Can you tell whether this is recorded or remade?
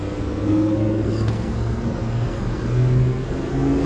remade